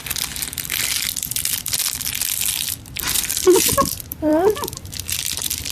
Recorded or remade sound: remade